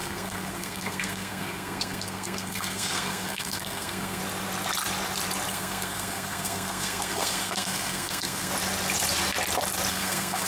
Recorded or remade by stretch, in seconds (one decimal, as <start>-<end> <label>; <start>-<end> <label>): 0.0-4.2 remade; 4.2-5.5 recorded; 5.5-8.5 remade; 8.5-9.9 recorded; 9.9-10.5 remade